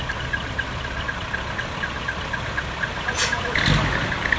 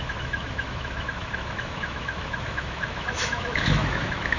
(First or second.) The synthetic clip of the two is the second